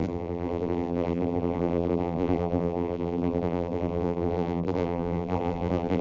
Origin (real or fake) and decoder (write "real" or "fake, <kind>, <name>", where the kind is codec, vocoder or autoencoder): fake, vocoder, BigVGAN v2